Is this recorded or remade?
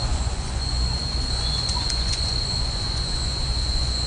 remade